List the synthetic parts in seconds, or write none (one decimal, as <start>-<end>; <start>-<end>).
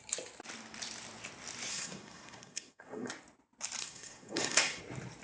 1.7-3.1; 3.8-4.8